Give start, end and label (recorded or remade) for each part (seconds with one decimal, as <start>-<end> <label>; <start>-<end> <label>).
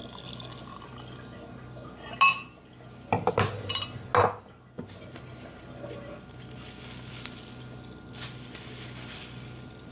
0.0-9.9 recorded